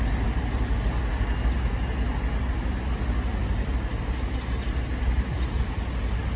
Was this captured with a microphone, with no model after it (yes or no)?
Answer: yes